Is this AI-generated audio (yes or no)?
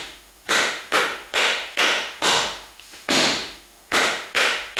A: yes